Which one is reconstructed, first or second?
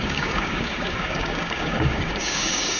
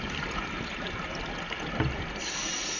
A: first